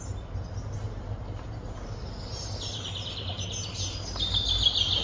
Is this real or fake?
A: real